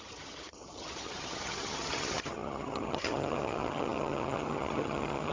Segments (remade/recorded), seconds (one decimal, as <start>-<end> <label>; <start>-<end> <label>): 0.0-5.3 remade

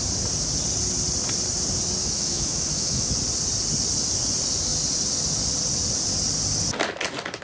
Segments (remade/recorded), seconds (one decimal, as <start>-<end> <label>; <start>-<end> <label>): 0.0-2.0 recorded; 2.0-3.1 remade; 3.1-7.4 recorded

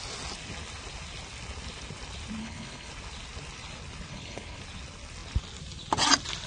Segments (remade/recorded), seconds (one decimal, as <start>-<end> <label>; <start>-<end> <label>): 0.0-2.4 recorded; 2.4-2.9 remade; 2.9-4.1 recorded; 4.1-4.6 remade; 4.6-6.5 recorded